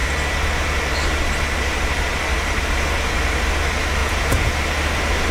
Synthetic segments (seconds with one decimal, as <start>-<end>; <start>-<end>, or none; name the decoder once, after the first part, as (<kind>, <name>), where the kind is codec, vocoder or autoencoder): 4.0-4.5 (vocoder, Vocos)